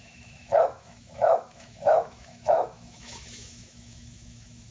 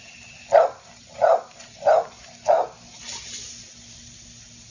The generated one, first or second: first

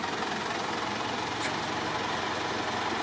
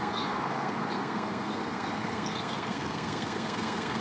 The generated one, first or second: second